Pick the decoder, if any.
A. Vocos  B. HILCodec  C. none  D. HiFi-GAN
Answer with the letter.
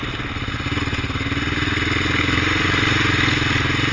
C